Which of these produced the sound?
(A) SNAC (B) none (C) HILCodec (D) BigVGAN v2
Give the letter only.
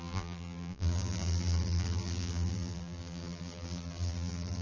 D